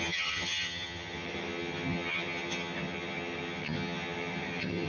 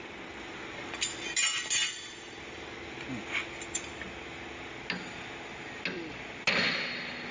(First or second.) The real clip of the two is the second